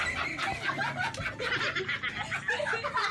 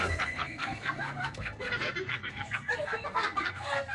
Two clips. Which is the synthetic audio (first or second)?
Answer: second